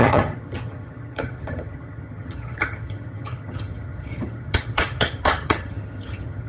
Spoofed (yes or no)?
yes